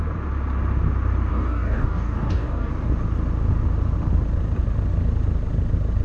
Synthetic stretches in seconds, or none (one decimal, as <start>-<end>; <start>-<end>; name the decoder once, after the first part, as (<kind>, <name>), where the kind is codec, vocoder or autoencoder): 1.3-2.7 (codec, DAC)